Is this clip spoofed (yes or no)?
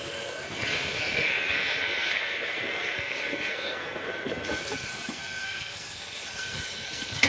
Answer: yes